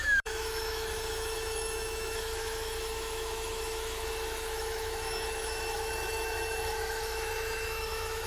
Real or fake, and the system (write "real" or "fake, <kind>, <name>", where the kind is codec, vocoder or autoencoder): fake, autoencoder, DAC-VAE